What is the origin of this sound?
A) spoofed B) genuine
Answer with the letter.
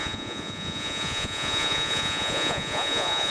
A